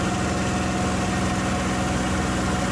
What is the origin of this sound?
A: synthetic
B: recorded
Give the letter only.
B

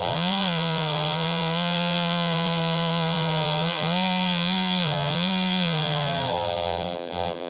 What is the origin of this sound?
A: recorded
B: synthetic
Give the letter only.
B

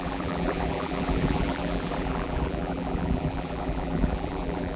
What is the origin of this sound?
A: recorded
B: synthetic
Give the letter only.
B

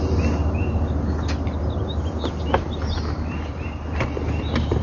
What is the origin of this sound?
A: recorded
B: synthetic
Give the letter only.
A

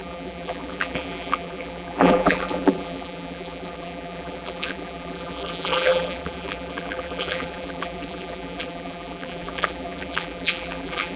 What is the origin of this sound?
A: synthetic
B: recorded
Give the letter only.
A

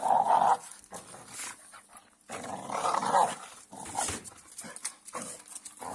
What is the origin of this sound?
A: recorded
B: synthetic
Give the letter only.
A